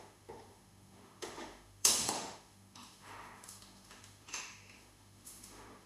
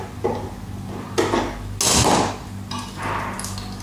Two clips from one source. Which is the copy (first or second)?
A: first